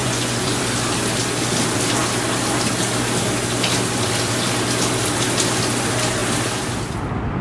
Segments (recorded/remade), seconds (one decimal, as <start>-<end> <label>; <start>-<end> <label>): 0.0-0.6 remade; 0.6-7.4 recorded